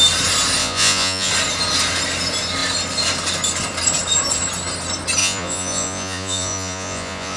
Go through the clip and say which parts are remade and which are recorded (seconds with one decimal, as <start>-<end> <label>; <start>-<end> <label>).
0.0-0.6 recorded; 0.6-1.3 remade; 1.3-5.2 recorded; 5.2-7.4 remade